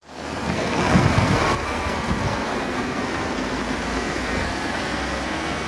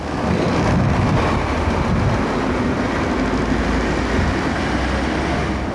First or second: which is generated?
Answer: first